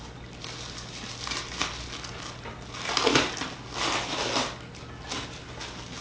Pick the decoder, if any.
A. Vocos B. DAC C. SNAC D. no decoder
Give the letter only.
D